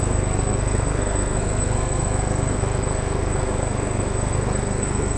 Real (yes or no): no